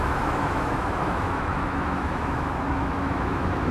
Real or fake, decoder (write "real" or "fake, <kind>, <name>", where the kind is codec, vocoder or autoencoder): fake, autoencoder, DAC-VAE